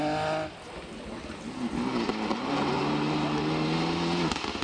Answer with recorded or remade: recorded